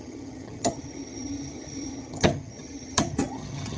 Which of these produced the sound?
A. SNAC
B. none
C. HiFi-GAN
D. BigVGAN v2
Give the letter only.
C